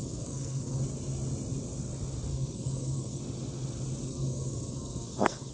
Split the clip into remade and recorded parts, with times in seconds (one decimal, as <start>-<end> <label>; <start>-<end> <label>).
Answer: 0.0-0.8 remade; 0.8-2.3 recorded; 2.3-3.2 remade; 3.2-4.1 recorded; 4.1-5.5 remade

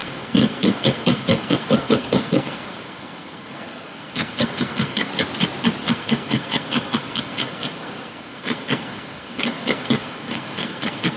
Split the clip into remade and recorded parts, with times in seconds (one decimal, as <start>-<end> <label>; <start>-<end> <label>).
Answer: 0.0-5.1 remade; 5.1-5.8 recorded; 5.8-11.2 remade

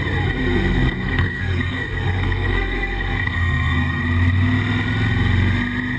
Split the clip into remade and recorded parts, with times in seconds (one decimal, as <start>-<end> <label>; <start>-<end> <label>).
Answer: 0.0-0.4 recorded; 0.4-4.0 remade; 4.0-6.0 recorded